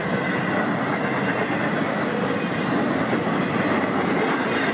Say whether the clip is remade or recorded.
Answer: recorded